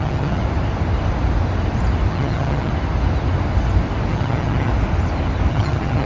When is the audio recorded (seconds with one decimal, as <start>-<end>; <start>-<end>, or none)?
0.4-2.1; 2.7-4.1; 4.7-5.5